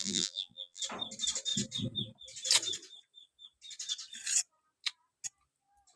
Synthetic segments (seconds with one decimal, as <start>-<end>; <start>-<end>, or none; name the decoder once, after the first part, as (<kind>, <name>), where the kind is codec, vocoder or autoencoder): 0.0-0.8 (vocoder, BigVGAN v2)